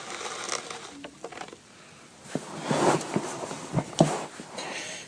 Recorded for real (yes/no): yes